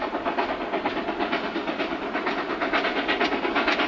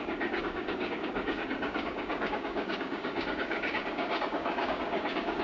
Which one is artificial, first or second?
second